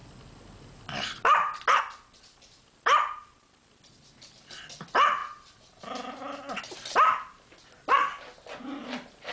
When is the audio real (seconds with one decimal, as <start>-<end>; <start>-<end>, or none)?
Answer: 0.0-9.3